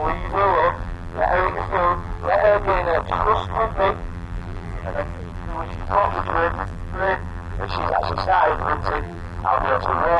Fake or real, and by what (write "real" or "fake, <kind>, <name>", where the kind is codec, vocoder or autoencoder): fake, vocoder, BigVGAN v2